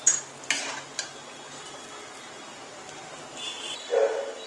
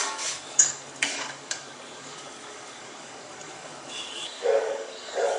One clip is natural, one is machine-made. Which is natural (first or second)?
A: first